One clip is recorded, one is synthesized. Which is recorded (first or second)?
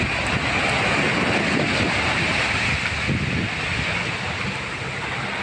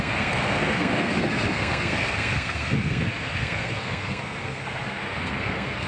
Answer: first